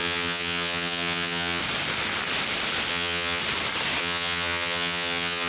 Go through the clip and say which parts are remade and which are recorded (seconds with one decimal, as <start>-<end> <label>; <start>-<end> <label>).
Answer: 0.0-1.6 remade; 1.6-2.9 recorded; 2.9-3.4 remade; 3.4-4.0 recorded; 4.0-5.5 remade